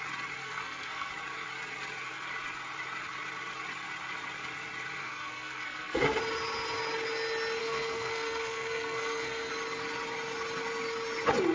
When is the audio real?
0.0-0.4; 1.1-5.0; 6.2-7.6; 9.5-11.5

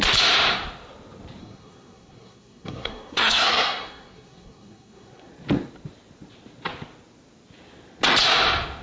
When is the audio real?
0.0-1.4; 5.3-8.8

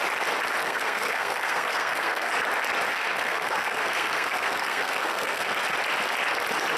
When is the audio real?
0.0-0.6; 2.3-2.9; 5.6-6.8